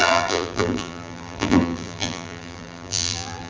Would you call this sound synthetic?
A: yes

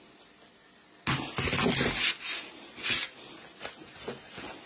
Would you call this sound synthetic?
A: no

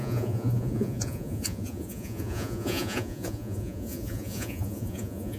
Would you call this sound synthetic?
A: yes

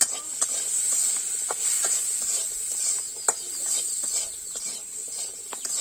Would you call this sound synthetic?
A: no